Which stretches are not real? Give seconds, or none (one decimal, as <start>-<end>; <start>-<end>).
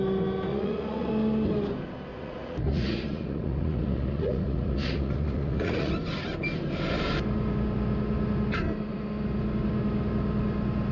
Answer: 0.5-1.1; 2.1-5.9